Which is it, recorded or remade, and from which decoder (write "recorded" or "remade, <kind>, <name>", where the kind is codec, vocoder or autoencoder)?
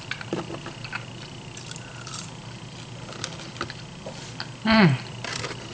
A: recorded